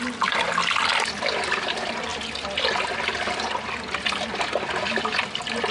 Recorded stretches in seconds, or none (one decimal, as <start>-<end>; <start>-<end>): 0.0-5.7